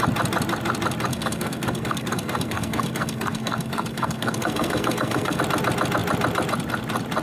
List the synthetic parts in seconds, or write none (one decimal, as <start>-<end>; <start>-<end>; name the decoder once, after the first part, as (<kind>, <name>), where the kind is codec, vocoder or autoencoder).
1.1-5.4 (codec, SNAC)